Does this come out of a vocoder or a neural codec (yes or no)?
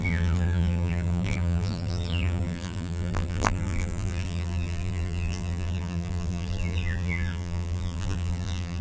yes